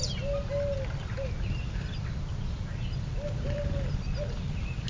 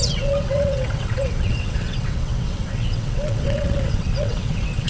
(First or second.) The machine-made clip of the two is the second